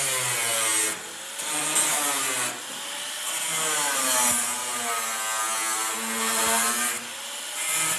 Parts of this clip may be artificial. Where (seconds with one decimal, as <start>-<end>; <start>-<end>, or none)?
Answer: none